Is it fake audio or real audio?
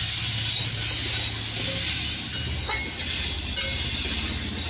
real